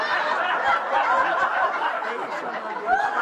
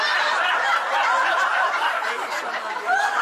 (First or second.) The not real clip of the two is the second